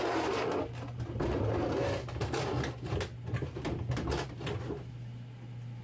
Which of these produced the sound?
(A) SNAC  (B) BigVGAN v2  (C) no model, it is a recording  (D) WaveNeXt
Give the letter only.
C